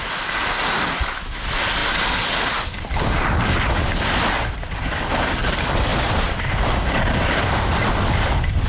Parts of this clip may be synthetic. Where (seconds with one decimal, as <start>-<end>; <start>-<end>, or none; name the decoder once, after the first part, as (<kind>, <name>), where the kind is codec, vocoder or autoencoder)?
5.9-7.9 (vocoder, BigVGAN v2)